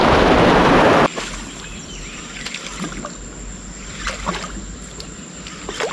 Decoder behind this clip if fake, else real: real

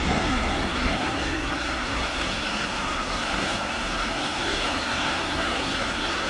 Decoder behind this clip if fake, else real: fake, codec, SNAC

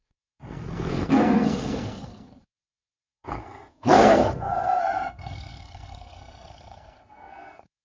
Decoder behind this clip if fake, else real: fake, codec, SNAC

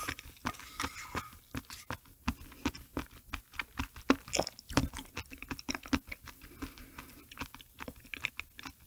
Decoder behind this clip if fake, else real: real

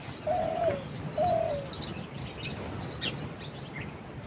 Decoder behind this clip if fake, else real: real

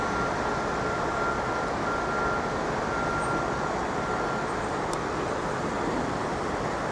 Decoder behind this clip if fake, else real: real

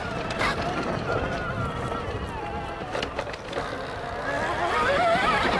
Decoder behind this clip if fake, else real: real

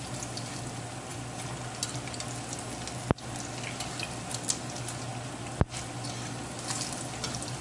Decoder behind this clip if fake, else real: real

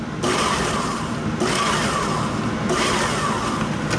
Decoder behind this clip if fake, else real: real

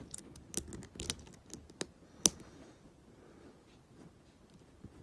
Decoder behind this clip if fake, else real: real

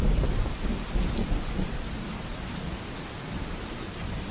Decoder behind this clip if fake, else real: real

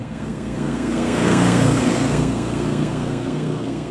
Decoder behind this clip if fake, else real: fake, codec, SNAC